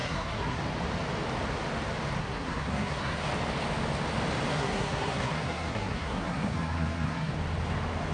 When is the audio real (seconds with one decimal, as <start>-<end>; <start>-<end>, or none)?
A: 0.6-2.2; 3.3-4.5; 7.3-8.1